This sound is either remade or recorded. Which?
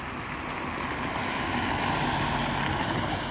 recorded